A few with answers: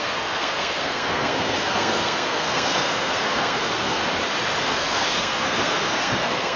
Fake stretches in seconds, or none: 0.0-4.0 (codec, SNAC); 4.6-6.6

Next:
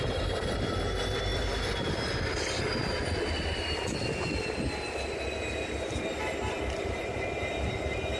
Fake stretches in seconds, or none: none

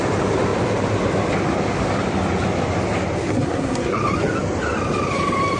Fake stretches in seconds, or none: 3.3-4.0 (codec, SNAC)

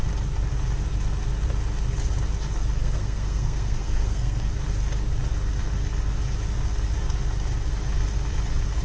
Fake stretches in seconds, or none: 2.8-4.5 (codec, SNAC)

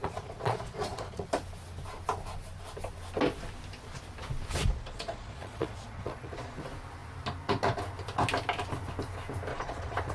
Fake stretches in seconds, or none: 0.0-1.3 (vocoder, Vocos); 4.6-6.6; 9.5-10.1

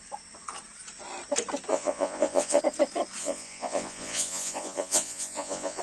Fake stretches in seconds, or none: 1.7-2.6 (vocoder, Vocos); 3.2-5.8